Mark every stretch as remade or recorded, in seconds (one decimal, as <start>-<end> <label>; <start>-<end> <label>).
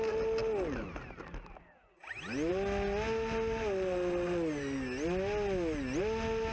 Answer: 0.0-6.5 recorded